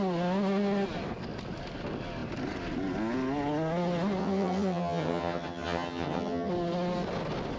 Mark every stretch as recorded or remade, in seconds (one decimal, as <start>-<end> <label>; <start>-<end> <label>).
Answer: 0.0-4.2 recorded; 4.2-6.5 remade; 6.5-7.6 recorded